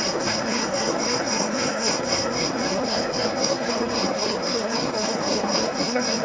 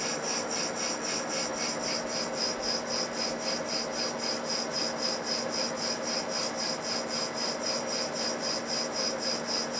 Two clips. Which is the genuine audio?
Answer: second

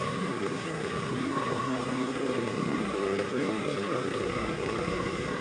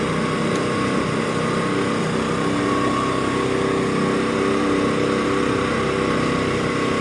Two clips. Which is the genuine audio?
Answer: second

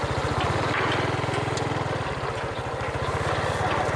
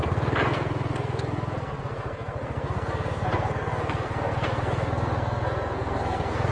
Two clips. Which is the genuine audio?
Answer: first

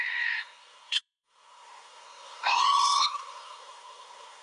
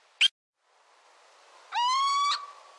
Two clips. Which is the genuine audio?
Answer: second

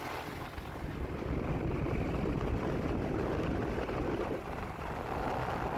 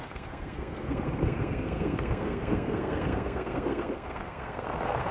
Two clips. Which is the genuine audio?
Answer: first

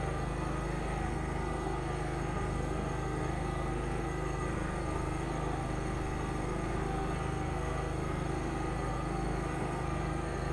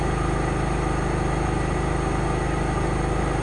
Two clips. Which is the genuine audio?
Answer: second